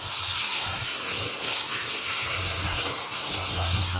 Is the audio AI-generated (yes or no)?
yes